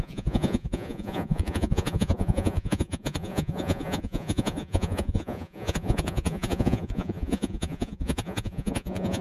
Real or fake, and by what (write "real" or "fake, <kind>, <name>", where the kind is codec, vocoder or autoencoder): fake, vocoder, Vocos